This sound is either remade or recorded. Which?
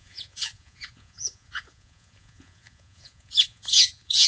remade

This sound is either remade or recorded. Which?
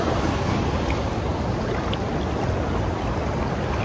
recorded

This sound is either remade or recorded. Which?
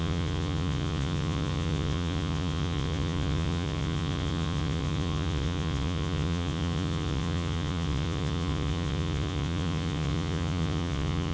remade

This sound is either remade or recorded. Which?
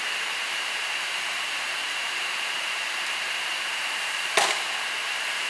remade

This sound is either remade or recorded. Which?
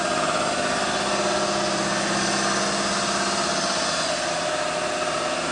recorded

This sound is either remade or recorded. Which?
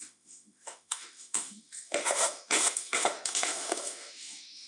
remade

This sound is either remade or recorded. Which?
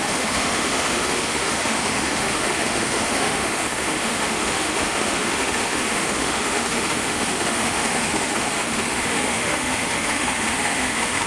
remade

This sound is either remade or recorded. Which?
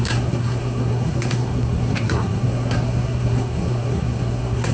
remade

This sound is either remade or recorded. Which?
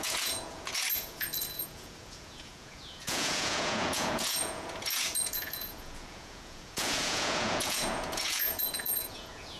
remade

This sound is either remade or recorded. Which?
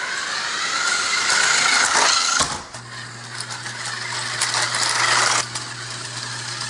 recorded